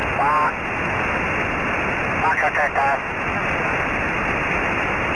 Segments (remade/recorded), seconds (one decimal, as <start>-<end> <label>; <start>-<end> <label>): 0.0-5.1 recorded